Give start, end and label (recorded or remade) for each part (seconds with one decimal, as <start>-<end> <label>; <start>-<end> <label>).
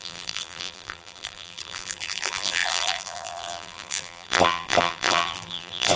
0.0-6.0 remade